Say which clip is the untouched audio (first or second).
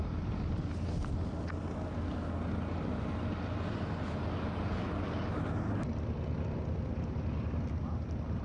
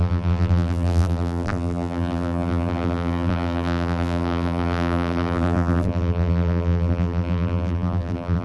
first